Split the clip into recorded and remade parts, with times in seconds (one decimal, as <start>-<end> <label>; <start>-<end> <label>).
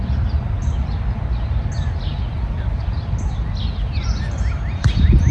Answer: 0.0-5.3 recorded